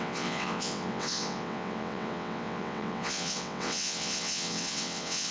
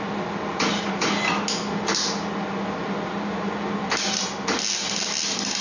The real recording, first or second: second